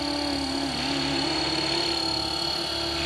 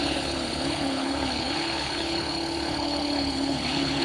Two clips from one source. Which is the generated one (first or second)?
second